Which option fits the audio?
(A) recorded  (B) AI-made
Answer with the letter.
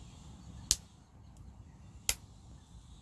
A